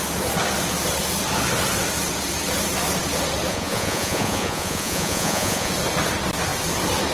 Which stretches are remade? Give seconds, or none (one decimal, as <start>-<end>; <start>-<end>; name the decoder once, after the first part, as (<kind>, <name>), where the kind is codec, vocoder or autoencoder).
3.5-5.7 (vocoder, Vocos)